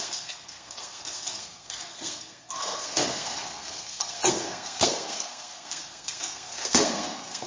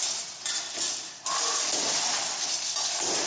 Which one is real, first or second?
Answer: second